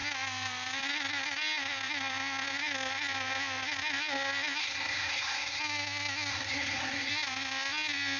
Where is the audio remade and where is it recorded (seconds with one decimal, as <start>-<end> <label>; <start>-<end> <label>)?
0.0-4.6 recorded; 4.6-5.6 remade; 5.6-6.3 recorded; 6.3-7.1 remade; 7.1-8.2 recorded